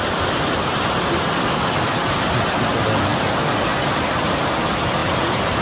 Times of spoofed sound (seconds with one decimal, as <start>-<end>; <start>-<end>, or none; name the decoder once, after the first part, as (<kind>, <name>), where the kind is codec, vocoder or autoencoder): none